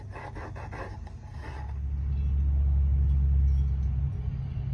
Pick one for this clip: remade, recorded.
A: recorded